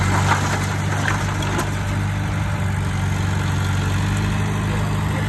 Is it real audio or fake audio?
real